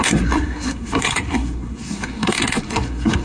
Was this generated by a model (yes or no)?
yes